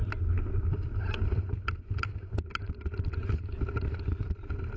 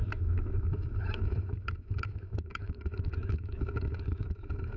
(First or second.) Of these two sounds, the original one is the first